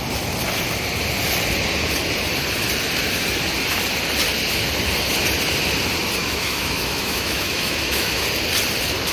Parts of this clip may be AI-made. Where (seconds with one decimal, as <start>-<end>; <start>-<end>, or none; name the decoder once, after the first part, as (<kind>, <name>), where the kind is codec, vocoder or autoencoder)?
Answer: 6.2-8.2 (autoencoder, DAC-VAE)